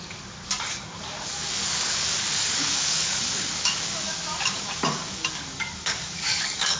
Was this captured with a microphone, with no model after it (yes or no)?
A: no